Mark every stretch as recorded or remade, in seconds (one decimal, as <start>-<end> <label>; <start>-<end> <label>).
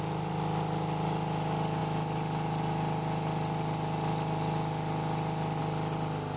0.0-6.4 recorded